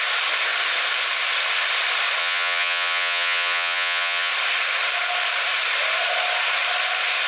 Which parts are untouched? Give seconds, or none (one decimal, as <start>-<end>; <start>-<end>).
0.0-2.2; 4.3-7.3